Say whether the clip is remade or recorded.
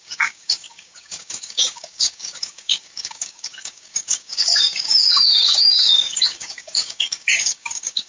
remade